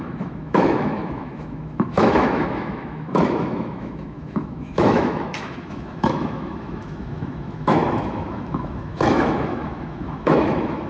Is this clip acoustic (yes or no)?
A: no